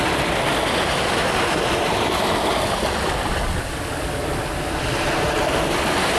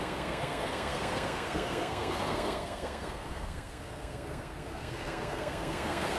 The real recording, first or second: first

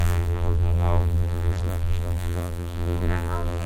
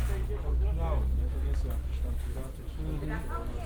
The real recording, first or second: second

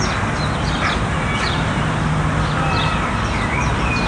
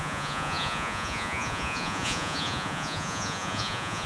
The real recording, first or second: first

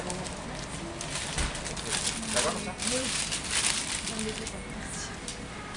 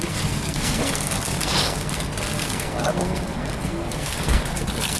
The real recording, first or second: first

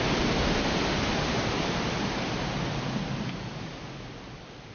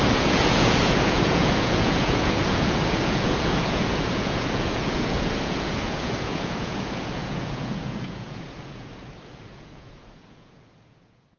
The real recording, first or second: first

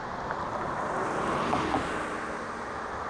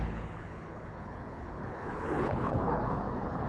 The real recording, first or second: first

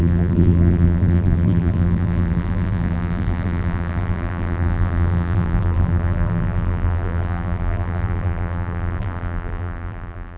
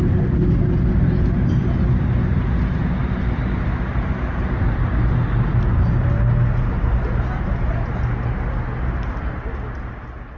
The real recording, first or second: second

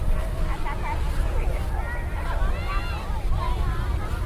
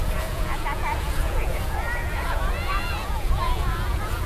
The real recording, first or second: first